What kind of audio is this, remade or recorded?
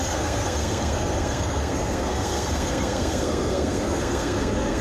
remade